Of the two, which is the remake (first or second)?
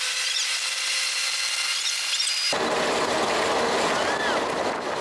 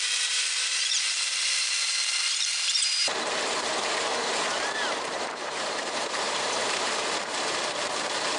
second